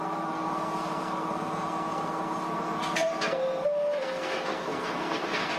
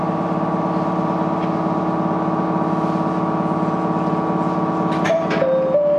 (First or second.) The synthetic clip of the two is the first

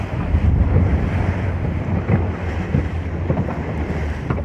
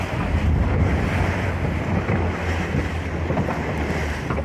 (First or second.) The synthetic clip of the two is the first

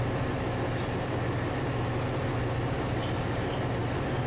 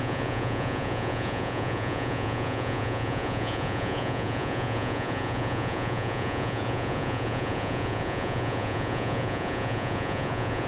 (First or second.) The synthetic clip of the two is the second